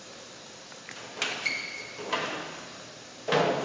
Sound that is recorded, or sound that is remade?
recorded